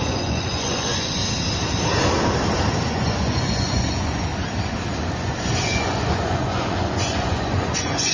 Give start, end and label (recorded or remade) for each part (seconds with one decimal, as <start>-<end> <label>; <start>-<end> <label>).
0.0-1.2 remade; 1.2-2.9 recorded; 2.9-4.3 remade; 4.3-5.1 recorded; 5.1-8.1 remade